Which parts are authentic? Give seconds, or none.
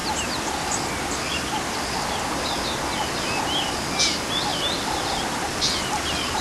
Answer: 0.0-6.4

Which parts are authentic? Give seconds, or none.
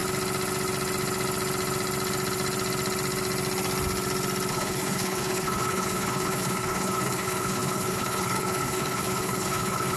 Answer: 0.0-4.5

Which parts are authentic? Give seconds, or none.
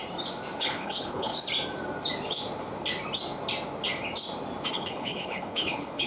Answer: 0.0-0.6; 1.3-4.7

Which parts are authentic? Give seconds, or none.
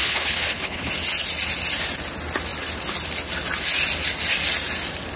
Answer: 0.9-5.2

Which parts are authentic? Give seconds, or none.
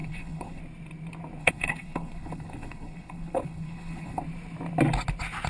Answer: 0.6-1.4; 4.2-5.5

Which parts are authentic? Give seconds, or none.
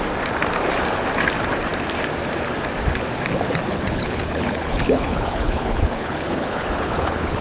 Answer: 0.0-3.7